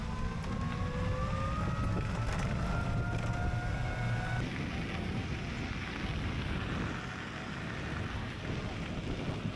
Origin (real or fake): real